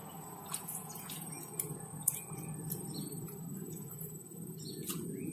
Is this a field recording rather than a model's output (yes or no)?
no